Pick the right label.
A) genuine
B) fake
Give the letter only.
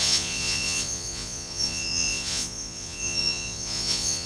B